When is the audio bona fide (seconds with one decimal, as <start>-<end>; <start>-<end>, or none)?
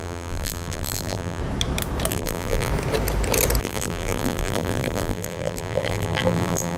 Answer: 1.4-2.1; 2.7-3.6